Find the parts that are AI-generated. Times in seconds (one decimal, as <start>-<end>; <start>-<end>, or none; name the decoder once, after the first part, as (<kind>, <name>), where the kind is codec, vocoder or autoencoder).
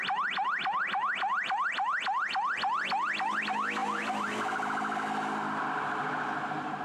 3.8-4.4 (vocoder, BigVGAN v2)